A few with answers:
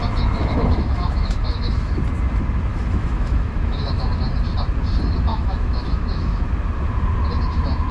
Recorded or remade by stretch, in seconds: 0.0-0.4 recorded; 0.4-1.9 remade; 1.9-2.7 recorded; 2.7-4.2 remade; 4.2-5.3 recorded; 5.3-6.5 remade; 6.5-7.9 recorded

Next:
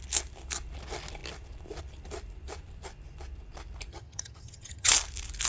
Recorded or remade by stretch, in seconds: 0.0-3.9 recorded; 3.9-4.9 remade; 4.9-5.5 recorded

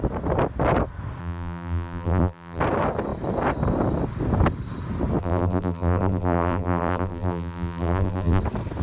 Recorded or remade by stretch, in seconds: 0.0-1.2 recorded; 1.2-2.6 remade; 2.6-5.2 recorded; 5.2-8.4 remade; 8.4-8.8 recorded

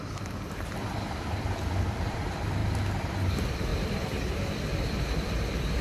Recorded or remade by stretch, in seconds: 0.0-2.6 remade; 2.6-3.3 recorded; 3.3-5.8 remade

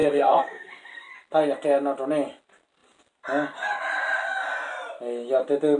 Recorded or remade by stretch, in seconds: 0.0-1.1 remade; 1.1-5.8 recorded

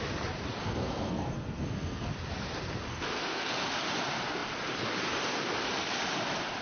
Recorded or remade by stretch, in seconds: 0.0-0.6 recorded; 0.6-2.1 remade; 2.1-2.9 recorded; 2.9-3.5 remade; 3.5-6.6 recorded

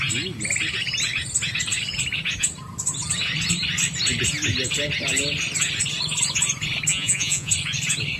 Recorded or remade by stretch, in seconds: 0.0-6.9 recorded; 6.9-7.5 remade; 7.5-8.2 recorded